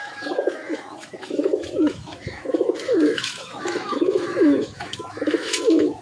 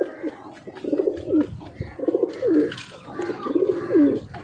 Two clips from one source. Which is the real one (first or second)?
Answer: second